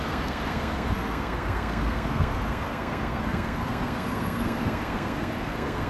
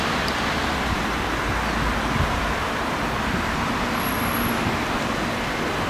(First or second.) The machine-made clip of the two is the first